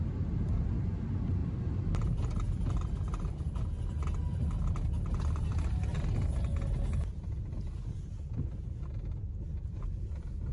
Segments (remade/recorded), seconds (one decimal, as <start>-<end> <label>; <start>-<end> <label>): 0.0-10.5 recorded